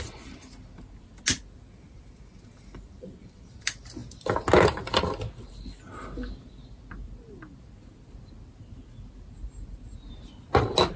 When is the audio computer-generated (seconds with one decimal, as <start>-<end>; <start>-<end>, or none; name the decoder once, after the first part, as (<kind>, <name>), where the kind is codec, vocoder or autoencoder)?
none